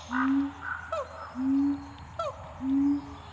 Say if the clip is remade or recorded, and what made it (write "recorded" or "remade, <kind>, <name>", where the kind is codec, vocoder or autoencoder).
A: recorded